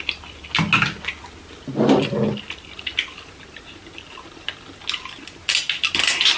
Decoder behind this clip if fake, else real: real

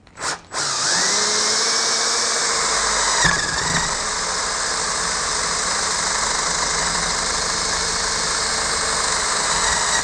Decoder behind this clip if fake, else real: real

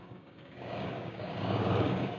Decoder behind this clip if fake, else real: fake, codec, DAC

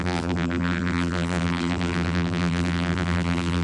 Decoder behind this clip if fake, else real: fake, vocoder, BigVGAN v2